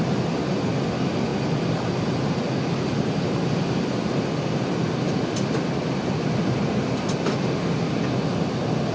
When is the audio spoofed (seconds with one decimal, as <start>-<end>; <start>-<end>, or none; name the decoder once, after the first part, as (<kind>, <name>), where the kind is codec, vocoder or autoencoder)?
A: none